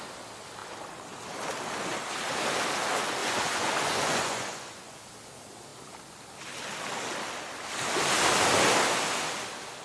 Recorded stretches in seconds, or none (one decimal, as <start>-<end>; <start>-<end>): 0.0-3.2; 5.0-9.8